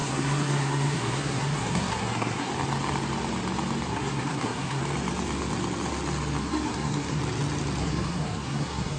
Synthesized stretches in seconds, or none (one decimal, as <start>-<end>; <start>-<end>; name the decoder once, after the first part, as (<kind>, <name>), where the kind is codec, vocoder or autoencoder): 0.0-2.5 (codec, SNAC); 3.9-4.8; 6.4-7.2; 7.8-9.0